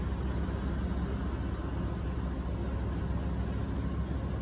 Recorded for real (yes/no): yes